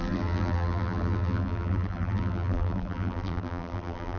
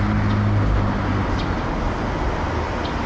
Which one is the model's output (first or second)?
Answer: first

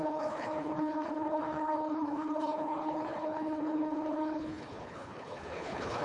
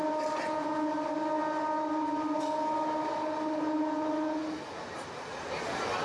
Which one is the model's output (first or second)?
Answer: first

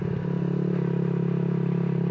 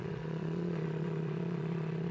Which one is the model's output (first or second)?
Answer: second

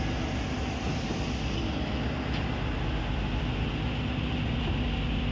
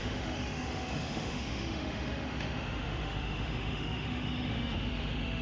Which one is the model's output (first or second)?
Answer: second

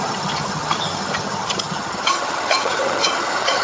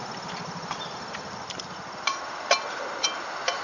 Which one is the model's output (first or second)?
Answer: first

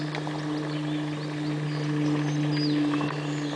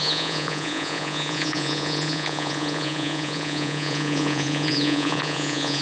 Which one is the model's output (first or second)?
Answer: second